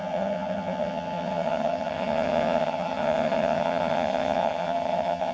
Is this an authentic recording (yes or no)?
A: no